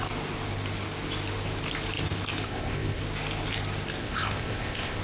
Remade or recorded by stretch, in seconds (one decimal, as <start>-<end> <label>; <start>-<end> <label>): 0.0-2.4 recorded; 2.4-3.0 remade; 3.0-4.0 recorded; 4.0-5.0 remade